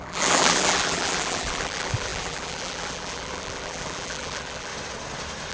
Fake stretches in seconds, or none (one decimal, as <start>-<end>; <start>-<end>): 0.0-4.7